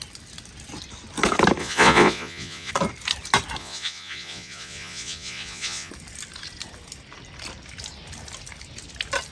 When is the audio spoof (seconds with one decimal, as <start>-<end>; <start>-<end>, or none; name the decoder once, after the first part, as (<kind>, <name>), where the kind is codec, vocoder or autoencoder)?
1.6-2.7 (vocoder, Vocos); 3.6-5.9